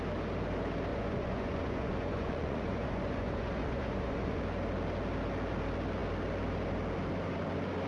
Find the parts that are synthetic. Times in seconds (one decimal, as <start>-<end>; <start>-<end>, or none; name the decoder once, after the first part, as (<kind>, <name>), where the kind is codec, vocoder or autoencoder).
0.9-4.4 (vocoder, Vocos)